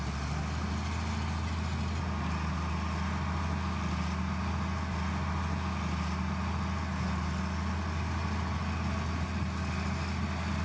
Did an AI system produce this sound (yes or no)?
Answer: no